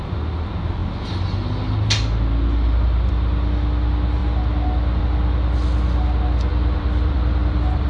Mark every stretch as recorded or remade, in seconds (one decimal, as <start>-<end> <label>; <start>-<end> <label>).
0.0-6.5 recorded; 6.5-7.9 remade